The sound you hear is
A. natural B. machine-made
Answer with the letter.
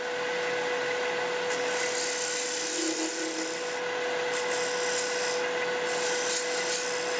A